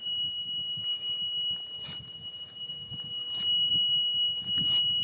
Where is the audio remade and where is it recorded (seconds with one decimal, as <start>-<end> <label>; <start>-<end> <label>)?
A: 0.0-5.0 recorded